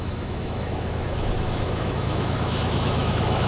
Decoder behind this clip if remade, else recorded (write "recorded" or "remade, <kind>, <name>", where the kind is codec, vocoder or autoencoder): remade, autoencoder, DAC-VAE